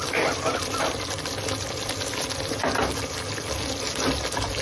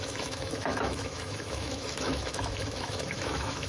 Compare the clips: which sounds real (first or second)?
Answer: first